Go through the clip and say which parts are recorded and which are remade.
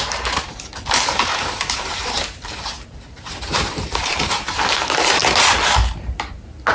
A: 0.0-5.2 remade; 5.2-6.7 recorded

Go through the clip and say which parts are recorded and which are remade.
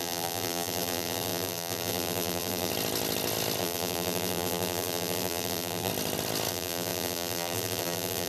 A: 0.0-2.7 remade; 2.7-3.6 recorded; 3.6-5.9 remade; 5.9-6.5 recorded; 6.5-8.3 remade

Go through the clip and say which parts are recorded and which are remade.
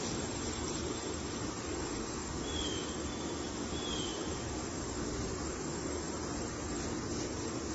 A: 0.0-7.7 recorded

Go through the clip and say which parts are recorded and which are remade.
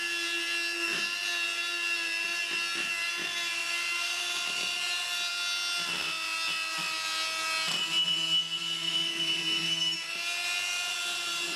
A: 0.0-3.6 recorded; 3.6-5.3 remade; 5.3-8.9 recorded; 8.9-9.6 remade; 9.6-11.6 recorded